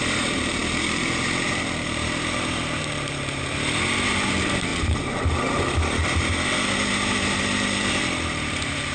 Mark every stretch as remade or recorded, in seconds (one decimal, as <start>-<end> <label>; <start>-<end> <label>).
0.0-8.9 remade